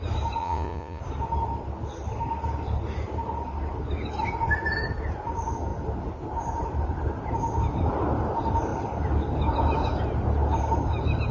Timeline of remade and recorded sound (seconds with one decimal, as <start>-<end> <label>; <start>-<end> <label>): 0.0-0.4 recorded; 0.4-1.0 remade; 1.0-11.3 recorded